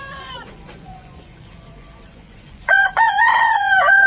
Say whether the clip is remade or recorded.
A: remade